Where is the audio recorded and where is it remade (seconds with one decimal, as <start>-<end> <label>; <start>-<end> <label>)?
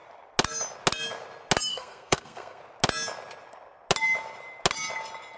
0.0-1.7 recorded; 1.7-2.6 remade; 2.6-5.4 recorded